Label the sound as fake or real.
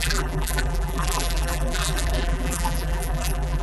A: fake